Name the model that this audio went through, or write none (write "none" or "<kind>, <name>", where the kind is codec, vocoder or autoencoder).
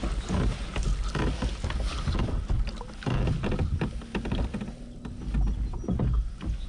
none